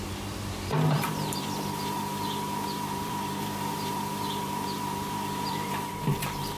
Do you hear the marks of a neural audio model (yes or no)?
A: yes